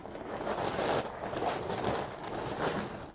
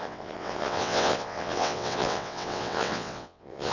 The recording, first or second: first